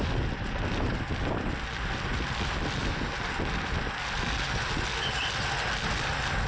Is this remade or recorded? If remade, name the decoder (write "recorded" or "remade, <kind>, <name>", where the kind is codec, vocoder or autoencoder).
recorded